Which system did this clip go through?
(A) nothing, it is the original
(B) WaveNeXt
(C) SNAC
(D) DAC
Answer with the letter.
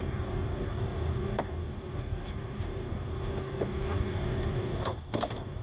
D